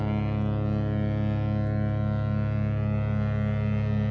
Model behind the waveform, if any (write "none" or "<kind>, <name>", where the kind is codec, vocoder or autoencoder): none